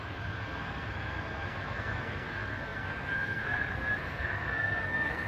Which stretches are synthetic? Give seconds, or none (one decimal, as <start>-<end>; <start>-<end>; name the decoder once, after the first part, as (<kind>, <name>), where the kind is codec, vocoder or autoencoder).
0.0-5.3 (codec, SNAC)